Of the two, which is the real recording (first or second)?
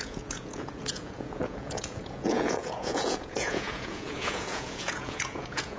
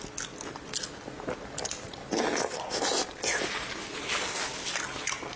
second